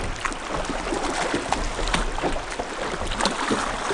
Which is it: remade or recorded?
recorded